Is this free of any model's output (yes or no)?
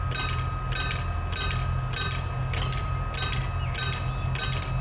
yes